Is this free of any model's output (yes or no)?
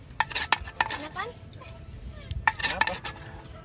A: yes